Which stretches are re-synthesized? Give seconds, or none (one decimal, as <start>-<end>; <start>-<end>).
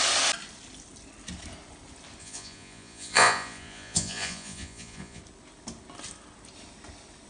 2.2-5.2